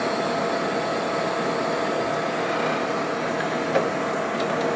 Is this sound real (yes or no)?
yes